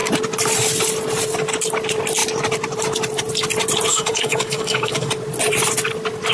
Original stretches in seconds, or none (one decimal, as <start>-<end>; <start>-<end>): 0.0-3.9; 5.1-6.3